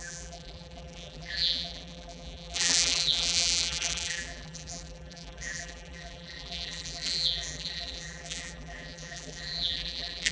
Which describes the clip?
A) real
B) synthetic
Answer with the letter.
B